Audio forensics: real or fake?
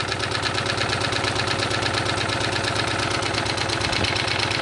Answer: real